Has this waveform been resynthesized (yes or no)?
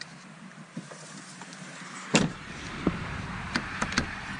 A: yes